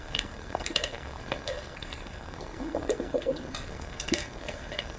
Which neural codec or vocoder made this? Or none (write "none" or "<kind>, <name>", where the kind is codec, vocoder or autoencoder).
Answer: codec, SNAC